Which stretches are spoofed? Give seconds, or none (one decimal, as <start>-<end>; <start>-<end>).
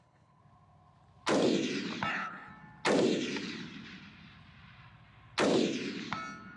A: 0.0-0.4; 2.1-2.5